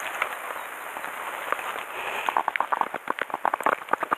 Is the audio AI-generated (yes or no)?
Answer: no